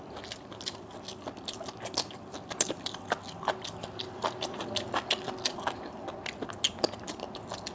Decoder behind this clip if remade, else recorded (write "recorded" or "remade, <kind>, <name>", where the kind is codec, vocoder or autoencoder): recorded